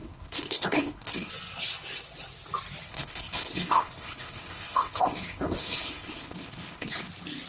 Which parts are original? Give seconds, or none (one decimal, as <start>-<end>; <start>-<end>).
1.3-2.9; 7.1-7.5